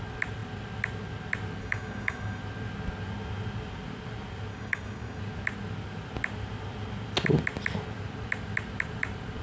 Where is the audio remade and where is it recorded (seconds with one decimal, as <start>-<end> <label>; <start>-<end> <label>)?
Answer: 0.0-1.6 recorded; 1.6-2.4 remade; 2.4-4.5 recorded; 4.5-5.2 remade; 5.2-9.4 recorded